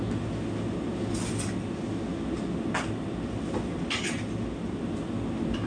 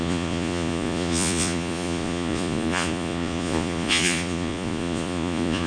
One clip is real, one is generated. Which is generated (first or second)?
second